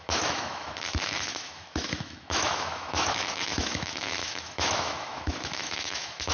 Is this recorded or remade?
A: remade